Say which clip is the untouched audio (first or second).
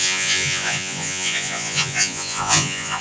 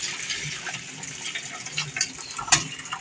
second